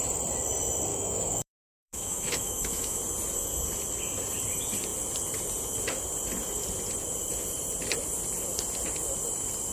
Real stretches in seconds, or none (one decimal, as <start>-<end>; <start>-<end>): 0.0-0.9; 3.0-9.7